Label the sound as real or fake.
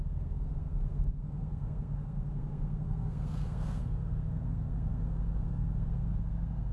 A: fake